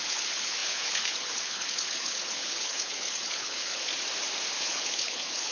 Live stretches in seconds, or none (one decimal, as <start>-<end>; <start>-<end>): 3.9-4.6